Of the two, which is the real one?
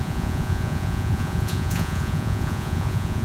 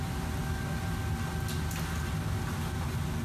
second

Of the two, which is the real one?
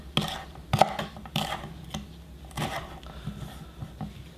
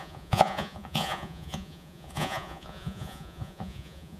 first